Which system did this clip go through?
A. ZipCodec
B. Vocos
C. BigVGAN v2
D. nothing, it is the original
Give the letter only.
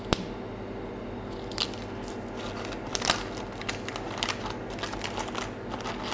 D